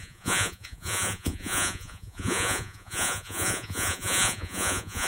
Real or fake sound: fake